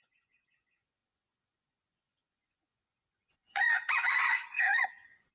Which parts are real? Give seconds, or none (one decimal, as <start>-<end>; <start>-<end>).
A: none